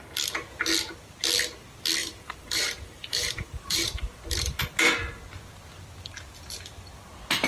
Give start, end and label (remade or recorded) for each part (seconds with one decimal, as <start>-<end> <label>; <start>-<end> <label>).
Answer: 0.0-2.0 recorded; 2.0-4.6 remade; 4.6-7.5 recorded